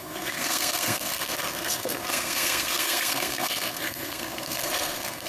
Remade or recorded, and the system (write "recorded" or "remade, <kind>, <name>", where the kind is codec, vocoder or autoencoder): remade, codec, SNAC